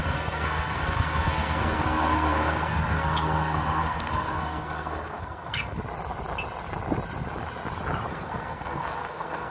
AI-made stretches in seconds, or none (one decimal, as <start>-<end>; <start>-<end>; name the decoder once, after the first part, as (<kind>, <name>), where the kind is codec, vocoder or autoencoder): 0.0-5.8 (codec, SNAC); 8.1-9.5

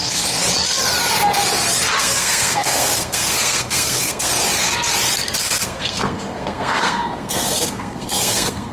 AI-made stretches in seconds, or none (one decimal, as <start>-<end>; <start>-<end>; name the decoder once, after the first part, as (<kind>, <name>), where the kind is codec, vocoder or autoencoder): 0.0-0.4 (codec, SNAC); 2.0-4.3; 5.4-8.7